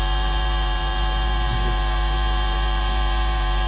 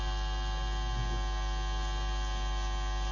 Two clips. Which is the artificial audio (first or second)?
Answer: first